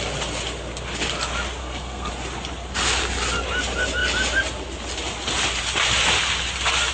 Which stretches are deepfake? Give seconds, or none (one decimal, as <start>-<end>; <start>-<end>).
1.6-2.1